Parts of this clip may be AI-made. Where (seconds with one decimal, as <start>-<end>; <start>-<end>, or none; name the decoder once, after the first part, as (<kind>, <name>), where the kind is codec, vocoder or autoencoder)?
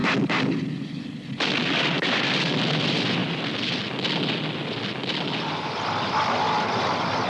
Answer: none